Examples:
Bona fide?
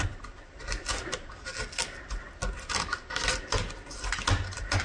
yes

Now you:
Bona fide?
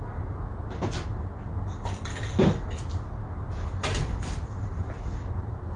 yes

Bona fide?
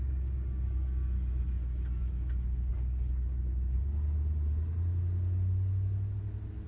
yes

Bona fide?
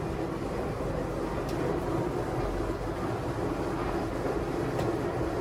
yes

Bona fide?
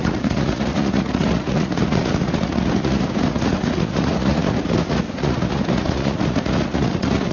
no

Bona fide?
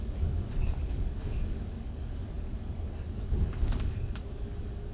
no